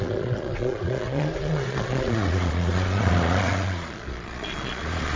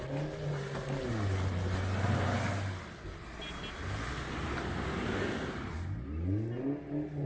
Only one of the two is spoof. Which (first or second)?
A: first